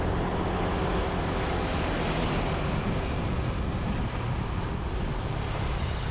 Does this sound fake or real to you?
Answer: real